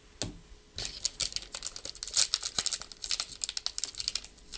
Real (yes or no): yes